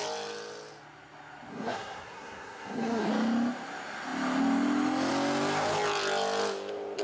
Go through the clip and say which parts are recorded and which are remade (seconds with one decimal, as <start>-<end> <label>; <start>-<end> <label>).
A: 0.0-1.5 recorded; 1.5-3.1 remade; 3.1-7.0 recorded